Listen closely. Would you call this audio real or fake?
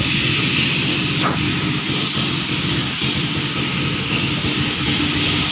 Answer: real